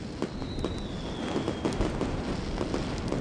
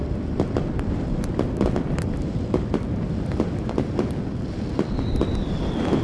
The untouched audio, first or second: first